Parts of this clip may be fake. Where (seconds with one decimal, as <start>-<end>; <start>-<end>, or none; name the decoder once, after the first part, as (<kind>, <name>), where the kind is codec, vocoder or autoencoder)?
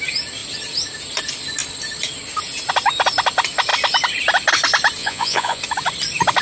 5.0-5.6 (vocoder, Vocos)